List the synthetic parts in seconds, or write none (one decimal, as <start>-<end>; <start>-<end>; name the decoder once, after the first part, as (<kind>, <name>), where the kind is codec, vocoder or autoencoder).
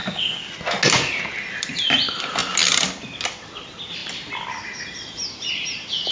0.0-0.5 (codec, DAC)